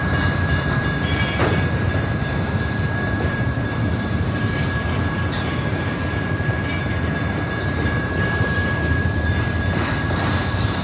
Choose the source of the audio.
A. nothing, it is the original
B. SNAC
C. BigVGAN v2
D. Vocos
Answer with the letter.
C